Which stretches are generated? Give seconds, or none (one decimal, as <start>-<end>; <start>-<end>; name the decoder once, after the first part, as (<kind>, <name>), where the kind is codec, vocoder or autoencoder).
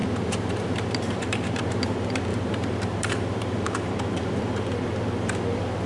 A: 0.0-1.8 (vocoder, BigVGAN v2); 2.3-4.4